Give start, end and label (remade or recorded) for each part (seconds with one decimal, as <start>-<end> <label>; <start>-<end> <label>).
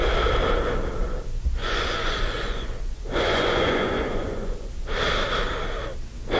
0.0-1.6 recorded; 1.6-4.7 remade; 4.7-6.4 recorded